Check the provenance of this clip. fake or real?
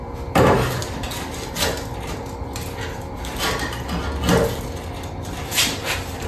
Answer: real